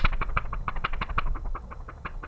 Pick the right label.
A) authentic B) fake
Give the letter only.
B